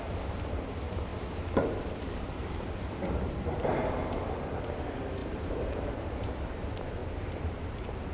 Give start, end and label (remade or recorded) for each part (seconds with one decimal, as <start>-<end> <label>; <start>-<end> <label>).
0.0-1.1 recorded; 1.1-2.7 remade; 2.7-7.0 recorded; 7.0-8.1 remade